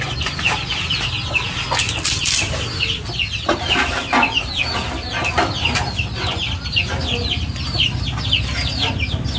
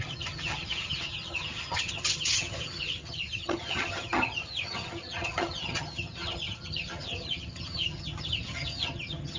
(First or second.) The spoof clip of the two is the second